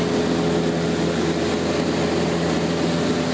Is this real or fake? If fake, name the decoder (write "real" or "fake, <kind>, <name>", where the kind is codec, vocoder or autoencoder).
real